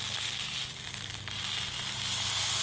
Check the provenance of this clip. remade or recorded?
recorded